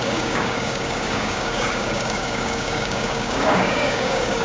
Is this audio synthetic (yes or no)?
yes